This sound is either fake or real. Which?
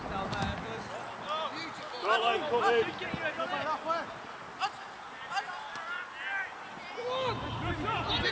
real